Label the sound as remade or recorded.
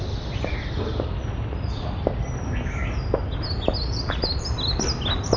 recorded